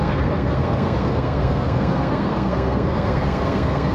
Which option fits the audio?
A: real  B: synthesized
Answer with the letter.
B